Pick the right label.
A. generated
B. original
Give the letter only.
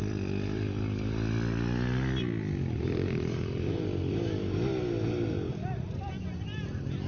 B